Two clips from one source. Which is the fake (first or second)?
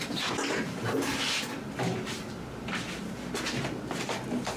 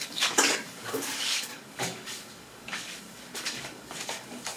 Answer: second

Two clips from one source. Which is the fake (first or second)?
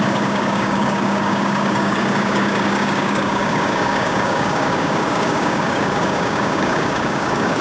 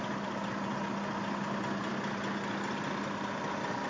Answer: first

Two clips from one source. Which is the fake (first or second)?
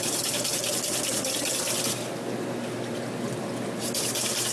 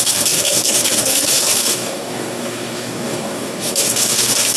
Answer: second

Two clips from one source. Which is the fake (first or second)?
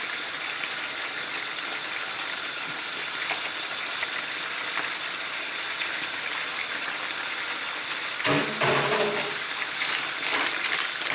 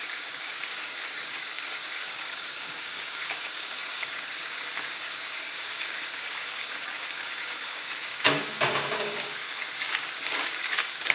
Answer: second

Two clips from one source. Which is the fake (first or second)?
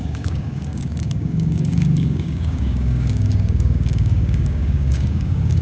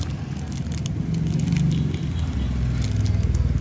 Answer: first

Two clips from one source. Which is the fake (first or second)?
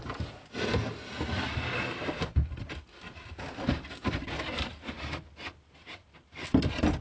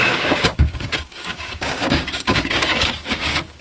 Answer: second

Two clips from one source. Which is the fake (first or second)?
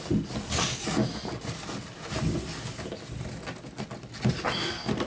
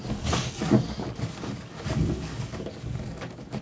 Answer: second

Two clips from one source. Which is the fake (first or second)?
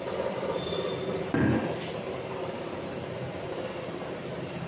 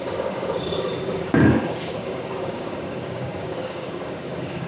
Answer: second